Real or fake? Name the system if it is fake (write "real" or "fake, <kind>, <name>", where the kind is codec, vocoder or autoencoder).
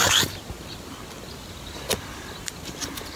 real